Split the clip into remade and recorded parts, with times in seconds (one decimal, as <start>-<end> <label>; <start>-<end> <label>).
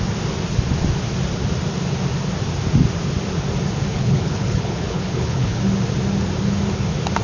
0.0-3.9 recorded; 3.9-5.6 remade; 5.6-7.2 recorded